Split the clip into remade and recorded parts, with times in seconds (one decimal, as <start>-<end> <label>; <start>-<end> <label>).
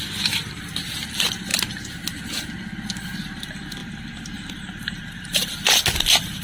0.0-3.8 recorded; 3.8-5.5 remade; 5.5-6.4 recorded